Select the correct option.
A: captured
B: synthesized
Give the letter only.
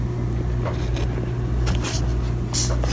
A